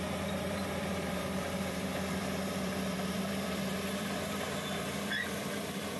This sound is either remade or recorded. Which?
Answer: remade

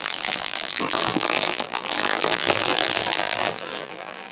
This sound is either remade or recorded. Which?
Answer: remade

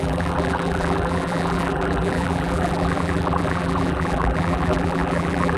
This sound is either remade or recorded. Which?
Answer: remade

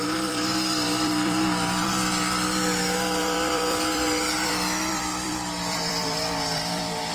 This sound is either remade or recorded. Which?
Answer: remade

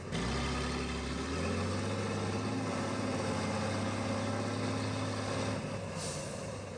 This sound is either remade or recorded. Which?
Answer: recorded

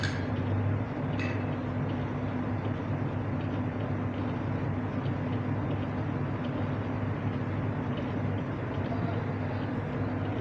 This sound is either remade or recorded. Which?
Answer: recorded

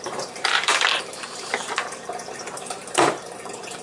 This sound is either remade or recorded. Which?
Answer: remade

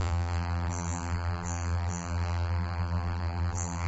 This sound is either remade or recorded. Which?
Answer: remade